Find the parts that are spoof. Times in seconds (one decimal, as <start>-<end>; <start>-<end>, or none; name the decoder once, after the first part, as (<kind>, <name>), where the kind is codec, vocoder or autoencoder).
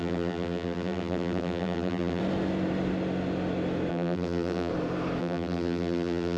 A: 0.0-2.2 (vocoder, BigVGAN v2); 3.9-4.7; 5.2-6.4